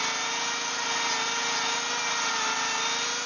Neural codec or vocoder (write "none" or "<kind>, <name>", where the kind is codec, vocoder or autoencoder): none